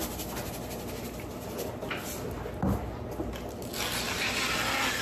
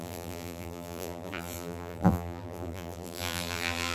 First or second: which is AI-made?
second